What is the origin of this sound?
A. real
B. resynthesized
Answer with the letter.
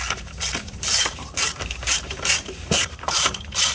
B